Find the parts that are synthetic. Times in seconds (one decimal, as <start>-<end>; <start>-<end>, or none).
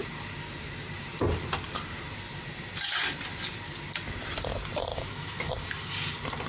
4.9-5.5